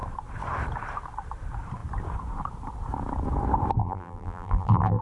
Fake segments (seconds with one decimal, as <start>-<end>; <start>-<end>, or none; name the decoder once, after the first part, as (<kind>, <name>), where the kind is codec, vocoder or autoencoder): 3.8-5.0 (vocoder, BigVGAN v2)